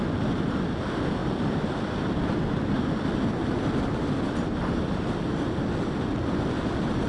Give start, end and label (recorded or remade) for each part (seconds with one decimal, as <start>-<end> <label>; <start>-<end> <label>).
0.0-7.1 recorded